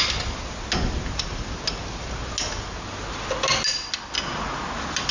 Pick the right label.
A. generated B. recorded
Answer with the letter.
B